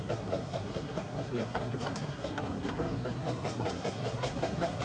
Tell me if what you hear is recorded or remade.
remade